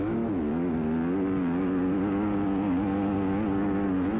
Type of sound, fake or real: real